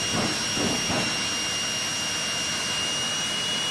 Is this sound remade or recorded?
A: recorded